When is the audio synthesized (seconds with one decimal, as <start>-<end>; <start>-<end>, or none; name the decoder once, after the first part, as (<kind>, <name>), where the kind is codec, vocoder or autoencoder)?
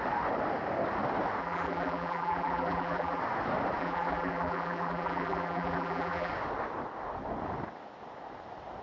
1.4-3.2 (vocoder, BigVGAN v2); 3.8-6.3